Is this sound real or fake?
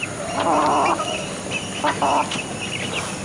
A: real